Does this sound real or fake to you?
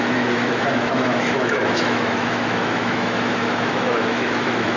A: fake